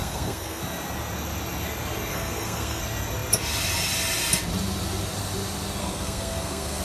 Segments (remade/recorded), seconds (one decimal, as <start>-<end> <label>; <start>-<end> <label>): 0.0-0.6 remade; 0.6-2.1 recorded; 2.1-2.8 remade; 2.8-5.8 recorded; 5.8-6.8 remade